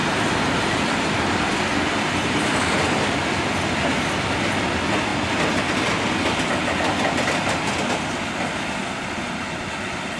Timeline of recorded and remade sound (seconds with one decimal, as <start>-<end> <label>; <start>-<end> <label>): 0.0-10.2 recorded

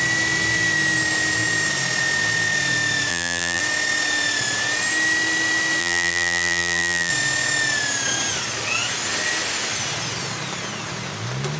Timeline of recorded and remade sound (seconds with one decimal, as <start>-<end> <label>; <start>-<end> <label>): 0.0-3.1 recorded; 3.1-3.6 remade; 3.6-5.8 recorded; 5.8-7.1 remade; 7.1-11.6 recorded